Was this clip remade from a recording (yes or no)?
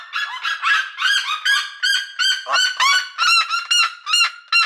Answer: no